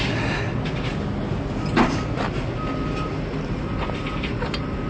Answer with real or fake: real